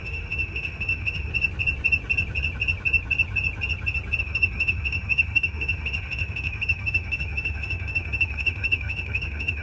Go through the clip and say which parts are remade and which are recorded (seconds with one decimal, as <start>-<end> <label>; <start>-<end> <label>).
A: 0.0-1.3 remade; 1.3-4.2 recorded; 4.2-9.6 remade